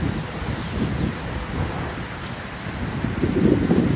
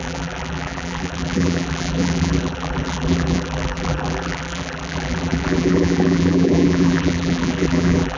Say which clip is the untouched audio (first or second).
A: first